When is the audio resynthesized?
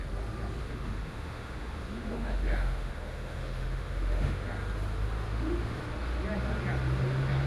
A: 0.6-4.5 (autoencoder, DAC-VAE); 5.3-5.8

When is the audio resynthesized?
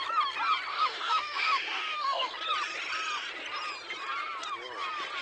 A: 0.7-2.3 (autoencoder, DAC-VAE)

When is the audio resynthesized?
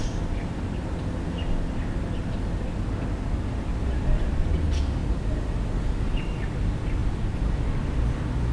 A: none